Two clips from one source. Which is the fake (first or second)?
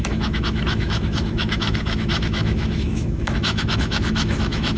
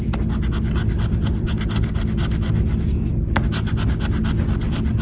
first